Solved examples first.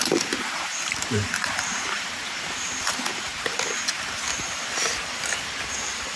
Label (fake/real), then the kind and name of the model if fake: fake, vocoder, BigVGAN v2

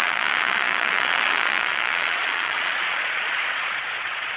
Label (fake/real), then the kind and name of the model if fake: fake, vocoder, Vocos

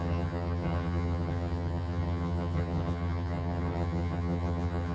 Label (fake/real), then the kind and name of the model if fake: fake, vocoder, HiFi-GAN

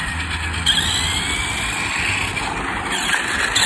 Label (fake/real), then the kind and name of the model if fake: real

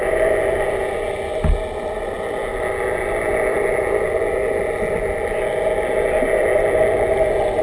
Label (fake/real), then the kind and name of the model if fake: real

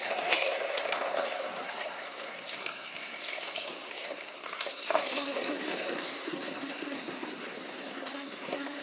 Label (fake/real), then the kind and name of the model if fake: fake, codec, SNAC